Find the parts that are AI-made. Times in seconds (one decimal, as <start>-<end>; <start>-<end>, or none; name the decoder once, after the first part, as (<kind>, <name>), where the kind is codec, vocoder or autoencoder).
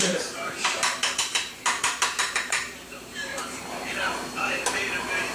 0.0-5.3 (vocoder, BigVGAN v2)